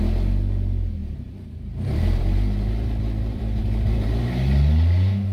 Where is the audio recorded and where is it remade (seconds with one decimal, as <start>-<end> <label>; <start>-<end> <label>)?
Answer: 0.0-1.0 recorded; 1.0-4.2 remade; 4.2-5.3 recorded